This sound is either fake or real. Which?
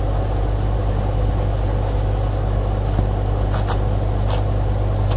real